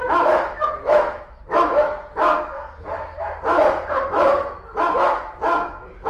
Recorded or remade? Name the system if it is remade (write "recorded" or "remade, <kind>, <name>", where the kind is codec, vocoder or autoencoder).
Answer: remade, autoencoder, DAC-VAE